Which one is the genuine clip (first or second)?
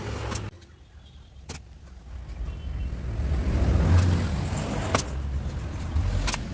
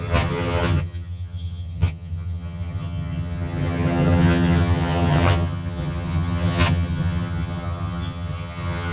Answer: first